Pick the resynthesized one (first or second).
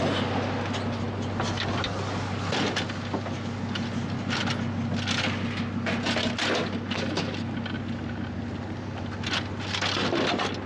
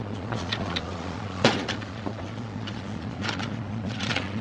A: second